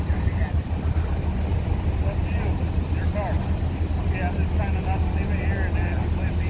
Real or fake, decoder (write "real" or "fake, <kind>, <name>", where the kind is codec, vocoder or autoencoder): real